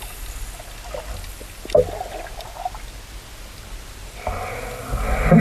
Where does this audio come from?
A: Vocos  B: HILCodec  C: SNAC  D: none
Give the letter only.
D